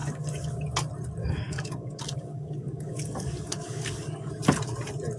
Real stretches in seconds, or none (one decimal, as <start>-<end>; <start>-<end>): 0.6-1.2; 4.3-5.2